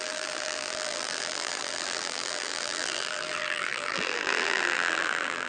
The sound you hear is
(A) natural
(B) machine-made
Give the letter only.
B